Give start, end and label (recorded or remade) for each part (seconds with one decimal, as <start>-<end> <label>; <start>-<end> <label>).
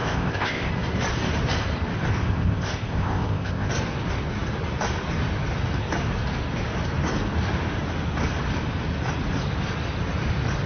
0.0-0.7 remade; 0.7-2.1 recorded; 2.1-3.7 remade; 3.7-10.7 recorded